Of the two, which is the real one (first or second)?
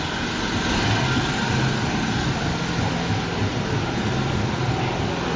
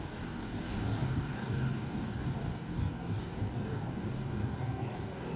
first